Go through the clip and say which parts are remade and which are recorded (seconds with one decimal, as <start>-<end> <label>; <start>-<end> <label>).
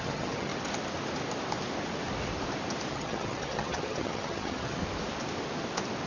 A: 0.0-0.5 remade; 0.5-2.9 recorded; 2.9-4.8 remade; 4.8-6.1 recorded